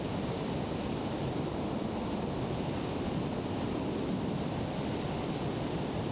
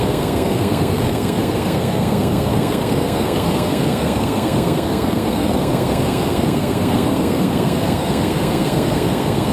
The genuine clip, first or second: first